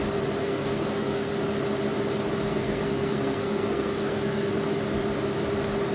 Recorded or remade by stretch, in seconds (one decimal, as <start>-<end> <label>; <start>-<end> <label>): 0.0-0.4 recorded; 0.4-1.3 remade; 1.3-2.5 recorded; 2.5-4.6 remade; 4.6-5.9 recorded